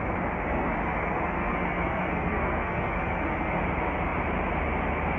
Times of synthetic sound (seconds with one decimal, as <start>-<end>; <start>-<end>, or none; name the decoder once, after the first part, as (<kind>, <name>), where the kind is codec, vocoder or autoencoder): 0.5-3.6 (codec, SNAC)